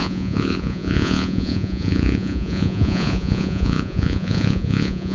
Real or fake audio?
fake